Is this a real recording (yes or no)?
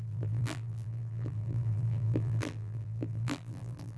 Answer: no